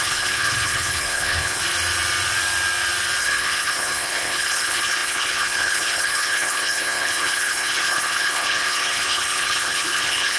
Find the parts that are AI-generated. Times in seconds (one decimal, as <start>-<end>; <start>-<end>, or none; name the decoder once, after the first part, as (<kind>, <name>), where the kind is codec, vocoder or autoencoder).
0.0-1.6 (codec, HILCodec); 3.2-10.4